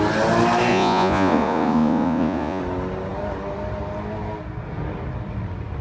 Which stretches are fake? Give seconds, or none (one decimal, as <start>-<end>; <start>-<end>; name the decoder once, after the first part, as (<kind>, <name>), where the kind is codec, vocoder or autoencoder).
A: 0.7-2.6 (vocoder, Vocos)